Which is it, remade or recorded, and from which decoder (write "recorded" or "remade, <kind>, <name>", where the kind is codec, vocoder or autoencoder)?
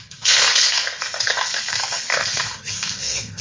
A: remade, codec, SNAC